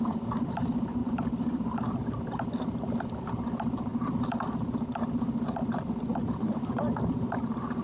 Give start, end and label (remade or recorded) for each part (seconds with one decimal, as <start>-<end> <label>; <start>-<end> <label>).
0.0-7.8 remade